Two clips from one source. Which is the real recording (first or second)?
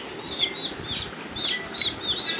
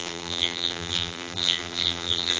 first